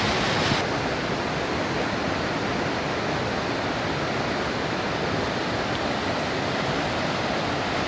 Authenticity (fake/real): real